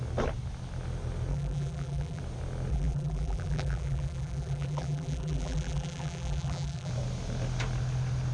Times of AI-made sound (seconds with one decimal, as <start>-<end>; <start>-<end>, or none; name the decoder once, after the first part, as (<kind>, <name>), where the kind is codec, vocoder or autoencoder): 1.3-2.2 (vocoder, BigVGAN v2); 2.7-6.9